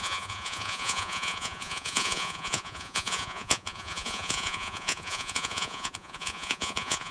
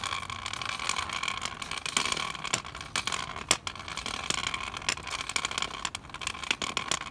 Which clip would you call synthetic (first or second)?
first